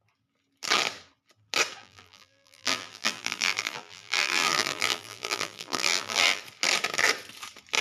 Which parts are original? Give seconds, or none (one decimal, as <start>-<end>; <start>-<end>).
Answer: 0.0-1.8; 6.4-7.8